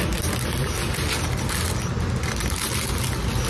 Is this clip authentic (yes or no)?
yes